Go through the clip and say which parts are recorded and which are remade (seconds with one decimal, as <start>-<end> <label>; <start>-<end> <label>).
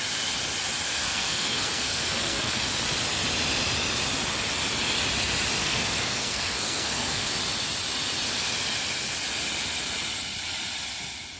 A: 0.0-1.0 recorded; 1.0-2.6 remade; 2.6-5.6 recorded; 5.6-7.3 remade; 7.3-11.4 recorded